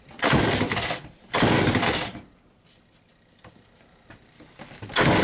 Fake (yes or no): yes